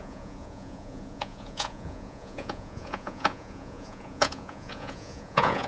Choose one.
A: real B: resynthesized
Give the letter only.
B